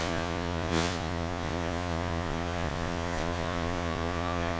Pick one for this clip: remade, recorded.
remade